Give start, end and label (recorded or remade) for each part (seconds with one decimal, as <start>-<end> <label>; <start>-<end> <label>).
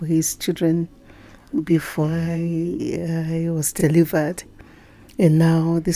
0.0-1.4 recorded; 1.4-2.8 remade; 2.8-6.0 recorded